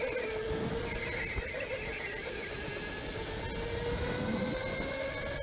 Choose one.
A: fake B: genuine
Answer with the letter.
B